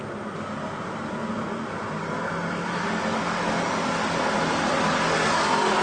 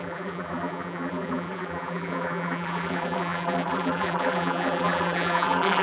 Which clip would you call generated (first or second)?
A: second